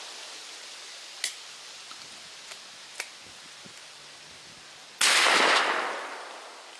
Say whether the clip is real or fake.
real